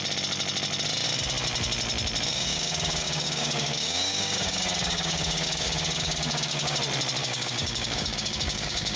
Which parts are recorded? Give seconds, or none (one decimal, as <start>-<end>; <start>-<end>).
0.0-2.3; 6.8-7.2